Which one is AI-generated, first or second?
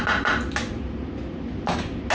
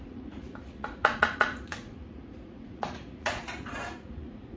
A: second